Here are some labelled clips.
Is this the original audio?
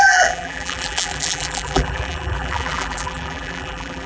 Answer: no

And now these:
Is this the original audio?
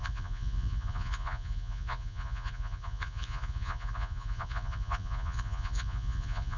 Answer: no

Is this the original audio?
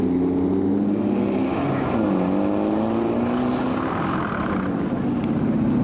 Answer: yes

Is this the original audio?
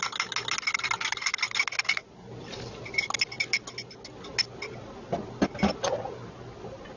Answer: yes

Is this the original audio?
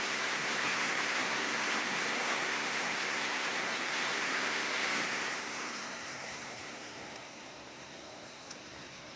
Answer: no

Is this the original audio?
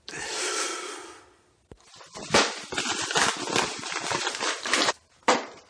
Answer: yes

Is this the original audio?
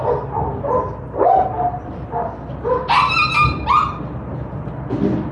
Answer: yes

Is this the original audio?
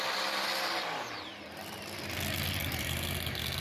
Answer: yes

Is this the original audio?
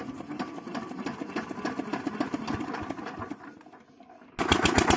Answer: yes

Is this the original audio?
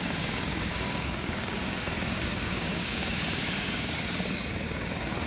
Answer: no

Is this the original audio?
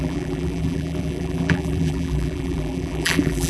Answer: no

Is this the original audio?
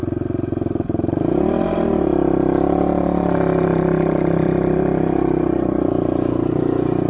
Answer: no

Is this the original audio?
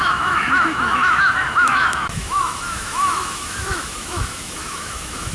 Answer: no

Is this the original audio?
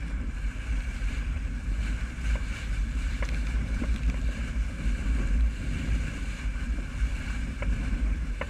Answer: no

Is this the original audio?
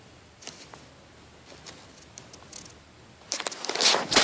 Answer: yes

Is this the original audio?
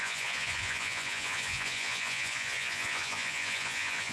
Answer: no